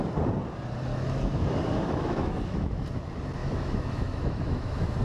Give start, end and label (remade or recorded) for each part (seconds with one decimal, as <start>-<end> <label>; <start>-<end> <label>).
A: 0.0-0.9 recorded; 0.9-2.8 remade; 2.8-3.4 recorded; 3.4-5.0 remade